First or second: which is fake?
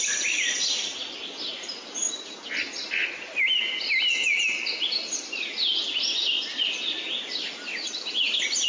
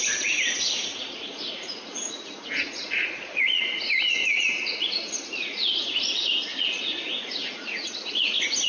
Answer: second